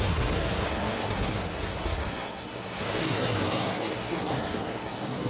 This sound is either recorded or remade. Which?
remade